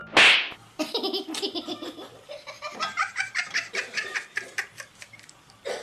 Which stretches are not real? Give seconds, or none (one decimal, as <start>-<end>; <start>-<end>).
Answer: 2.1-5.8